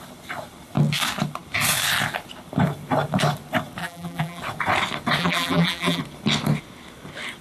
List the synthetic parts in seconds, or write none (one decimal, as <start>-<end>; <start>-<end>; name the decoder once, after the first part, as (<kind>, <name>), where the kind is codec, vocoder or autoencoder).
3.8-4.4 (vocoder, BigVGAN v2); 5.2-6.0

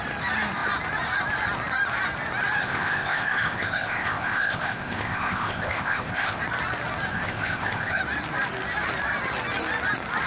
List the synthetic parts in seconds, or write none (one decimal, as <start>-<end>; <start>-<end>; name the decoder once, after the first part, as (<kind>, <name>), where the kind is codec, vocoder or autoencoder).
2.6-6.4 (codec, ZipCodec); 7.1-8.0

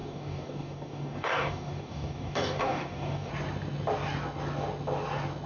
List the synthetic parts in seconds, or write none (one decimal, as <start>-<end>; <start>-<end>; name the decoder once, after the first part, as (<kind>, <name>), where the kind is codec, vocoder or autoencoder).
0.0-3.3 (codec, DAC)

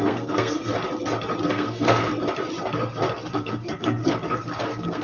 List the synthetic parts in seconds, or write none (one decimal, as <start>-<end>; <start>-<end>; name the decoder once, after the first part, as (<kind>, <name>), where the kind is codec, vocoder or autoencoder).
0.0-0.7 (codec, SNAC); 1.5-2.0; 3.3-4.0; 4.6-5.0

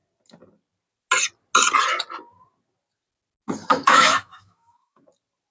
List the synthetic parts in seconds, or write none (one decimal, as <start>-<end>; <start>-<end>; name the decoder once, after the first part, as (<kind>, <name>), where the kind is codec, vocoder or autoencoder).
3.7-5.0 (autoencoder, DAC-VAE)